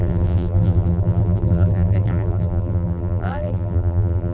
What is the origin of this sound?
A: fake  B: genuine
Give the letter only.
A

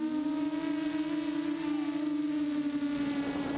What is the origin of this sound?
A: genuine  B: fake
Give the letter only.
A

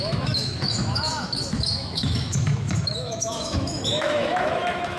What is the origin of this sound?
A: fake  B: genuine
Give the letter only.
A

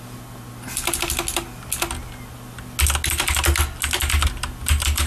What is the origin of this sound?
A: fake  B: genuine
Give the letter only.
B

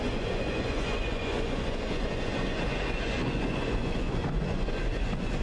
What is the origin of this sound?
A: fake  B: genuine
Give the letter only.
A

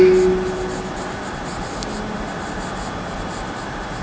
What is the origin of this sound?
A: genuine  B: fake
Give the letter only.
A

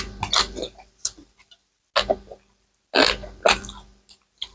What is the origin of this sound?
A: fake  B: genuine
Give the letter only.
B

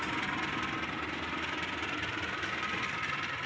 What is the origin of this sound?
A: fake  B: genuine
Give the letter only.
B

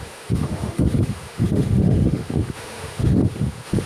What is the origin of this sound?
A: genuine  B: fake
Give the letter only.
B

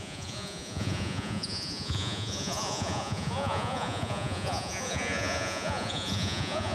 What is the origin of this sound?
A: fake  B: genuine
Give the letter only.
A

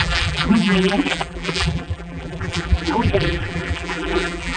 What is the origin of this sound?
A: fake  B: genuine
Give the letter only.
A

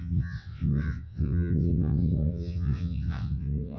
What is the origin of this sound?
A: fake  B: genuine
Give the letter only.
A